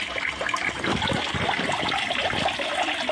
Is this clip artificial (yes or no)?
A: no